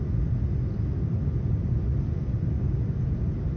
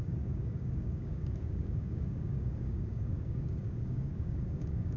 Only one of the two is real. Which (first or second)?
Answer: first